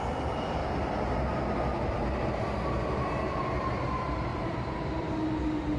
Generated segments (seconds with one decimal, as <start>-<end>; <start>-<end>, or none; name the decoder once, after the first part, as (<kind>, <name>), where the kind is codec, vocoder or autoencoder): 4.3-5.0 (vocoder, BigVGAN v2)